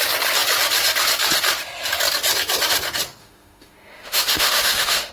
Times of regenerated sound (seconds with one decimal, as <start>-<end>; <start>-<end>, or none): 3.2-5.1